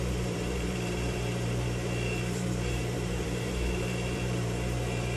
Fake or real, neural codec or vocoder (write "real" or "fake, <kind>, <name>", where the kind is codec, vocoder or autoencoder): fake, vocoder, BigVGAN v2